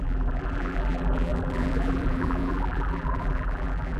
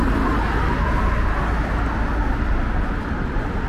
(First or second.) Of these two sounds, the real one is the second